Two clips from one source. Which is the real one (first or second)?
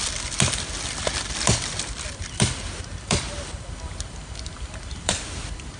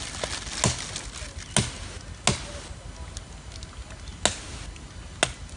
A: second